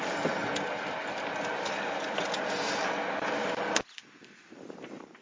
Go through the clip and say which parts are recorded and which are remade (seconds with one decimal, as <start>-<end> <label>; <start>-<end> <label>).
0.0-5.2 recorded